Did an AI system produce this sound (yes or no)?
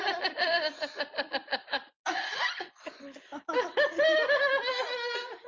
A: no